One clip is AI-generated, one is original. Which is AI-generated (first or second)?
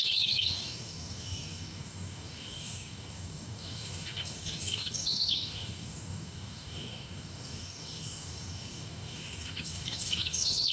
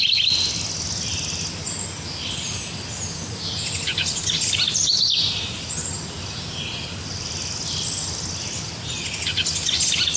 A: first